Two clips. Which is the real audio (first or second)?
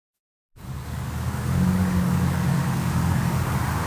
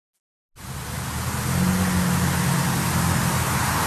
second